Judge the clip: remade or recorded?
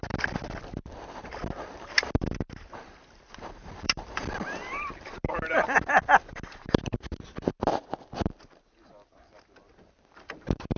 remade